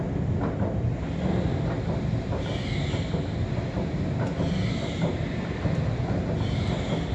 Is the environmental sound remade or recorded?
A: recorded